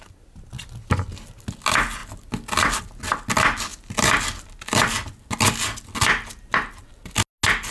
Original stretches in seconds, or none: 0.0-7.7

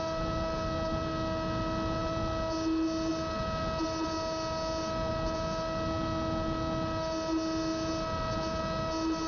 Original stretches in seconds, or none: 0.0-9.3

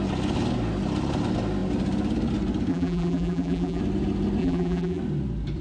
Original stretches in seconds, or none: 0.0-2.7; 3.8-4.4; 5.0-5.6

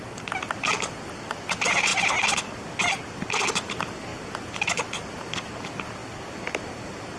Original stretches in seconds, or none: 0.0-7.2

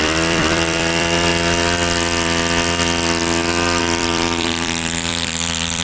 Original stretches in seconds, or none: 1.3-3.8